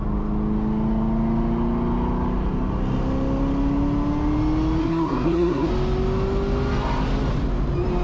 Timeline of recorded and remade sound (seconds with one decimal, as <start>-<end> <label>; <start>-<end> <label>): 0.0-4.8 recorded; 4.8-5.7 remade; 5.7-8.0 recorded